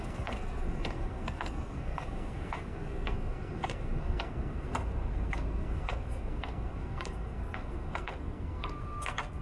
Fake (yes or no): yes